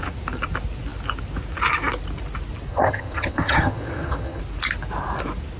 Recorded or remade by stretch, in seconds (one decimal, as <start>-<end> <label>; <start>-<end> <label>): 0.0-2.7 recorded; 2.7-4.4 remade; 4.4-5.6 recorded